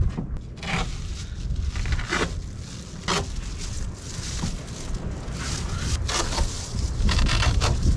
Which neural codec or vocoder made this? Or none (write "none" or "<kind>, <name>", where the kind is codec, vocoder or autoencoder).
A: none